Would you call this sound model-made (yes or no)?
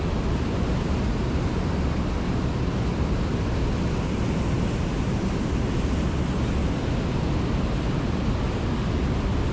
no